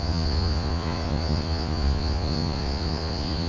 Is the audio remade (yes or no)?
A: yes